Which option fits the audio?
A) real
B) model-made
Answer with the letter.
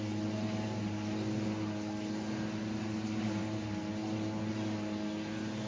A